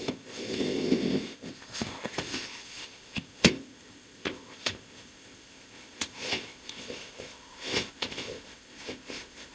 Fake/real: fake